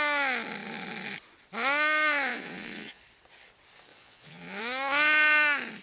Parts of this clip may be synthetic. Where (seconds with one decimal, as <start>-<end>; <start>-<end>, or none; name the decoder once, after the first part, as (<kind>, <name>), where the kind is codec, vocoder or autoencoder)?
2.3-3.0 (vocoder, Vocos); 3.9-4.6